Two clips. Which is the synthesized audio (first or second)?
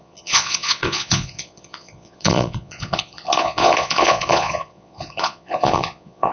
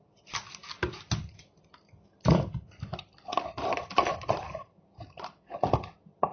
first